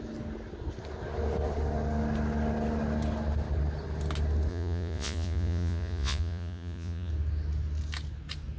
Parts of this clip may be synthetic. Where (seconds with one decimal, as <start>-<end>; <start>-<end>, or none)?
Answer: 4.5-7.1